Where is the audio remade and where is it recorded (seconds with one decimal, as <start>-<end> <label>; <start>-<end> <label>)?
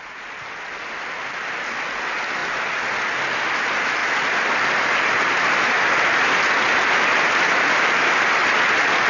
0.0-9.1 recorded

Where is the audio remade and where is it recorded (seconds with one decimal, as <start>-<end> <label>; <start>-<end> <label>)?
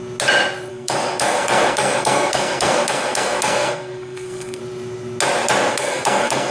0.0-0.7 recorded; 0.7-4.6 remade; 4.6-5.7 recorded; 5.7-6.5 remade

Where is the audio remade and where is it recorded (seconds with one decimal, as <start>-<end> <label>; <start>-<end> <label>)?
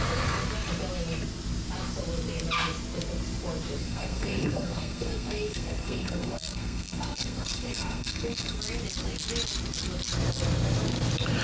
0.0-3.8 recorded; 3.8-8.6 remade; 8.6-11.4 recorded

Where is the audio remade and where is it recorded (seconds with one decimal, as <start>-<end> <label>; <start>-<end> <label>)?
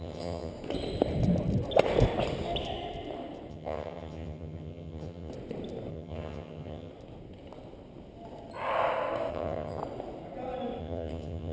0.0-0.5 remade; 0.5-3.5 recorded; 3.5-5.3 remade; 5.3-5.9 recorded; 5.9-6.9 remade; 6.9-9.3 recorded; 9.3-9.8 remade; 9.8-10.8 recorded; 10.8-11.5 remade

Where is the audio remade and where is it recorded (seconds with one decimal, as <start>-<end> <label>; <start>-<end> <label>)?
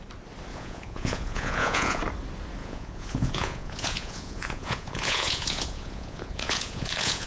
0.0-0.5 recorded; 0.5-2.0 remade; 2.0-2.6 recorded; 2.6-7.3 remade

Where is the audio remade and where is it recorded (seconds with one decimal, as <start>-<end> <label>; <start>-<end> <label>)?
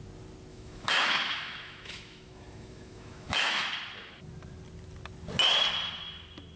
0.0-0.5 recorded; 0.5-3.7 remade; 3.7-6.6 recorded